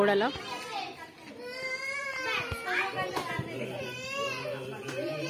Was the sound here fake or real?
real